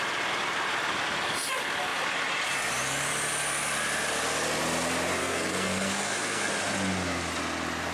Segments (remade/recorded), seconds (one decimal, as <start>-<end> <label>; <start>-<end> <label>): 0.0-5.2 recorded; 5.2-6.5 remade; 6.5-7.9 recorded